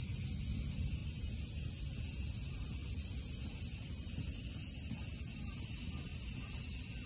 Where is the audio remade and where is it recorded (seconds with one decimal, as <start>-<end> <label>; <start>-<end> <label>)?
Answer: 0.0-1.0 recorded; 1.0-1.7 remade; 1.7-7.1 recorded